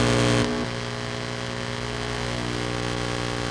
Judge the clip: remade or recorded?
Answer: recorded